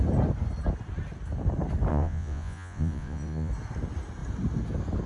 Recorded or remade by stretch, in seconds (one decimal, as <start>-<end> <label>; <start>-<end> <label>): 0.0-1.9 recorded; 1.9-3.5 remade; 3.5-5.1 recorded